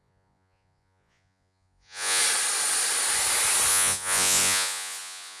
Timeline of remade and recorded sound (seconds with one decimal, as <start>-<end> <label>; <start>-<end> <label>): 0.0-2.2 remade; 2.2-3.7 recorded; 3.7-5.4 remade